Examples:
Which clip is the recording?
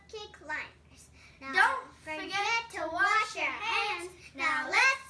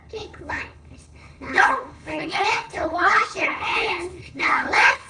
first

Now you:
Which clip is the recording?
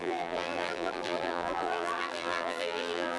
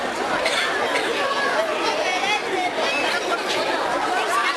second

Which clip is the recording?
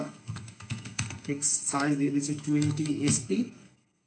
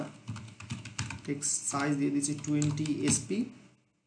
second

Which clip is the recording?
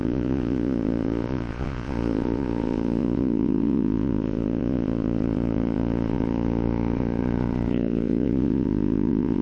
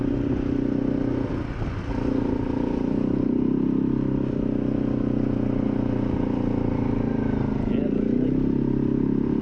second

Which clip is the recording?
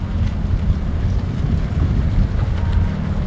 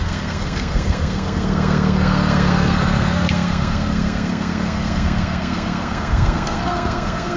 first